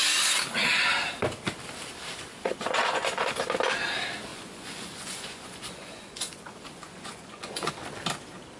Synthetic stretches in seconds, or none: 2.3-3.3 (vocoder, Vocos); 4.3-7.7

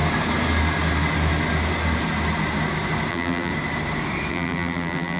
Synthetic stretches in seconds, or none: 3.1-3.5 (vocoder, BigVGAN v2); 4.3-5.2

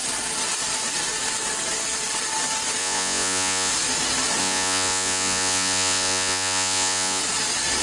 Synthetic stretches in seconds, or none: 2.8-3.7 (vocoder, Vocos); 4.4-7.2

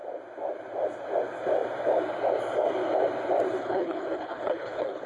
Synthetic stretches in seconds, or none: 3.6-5.1 (codec, HILCodec)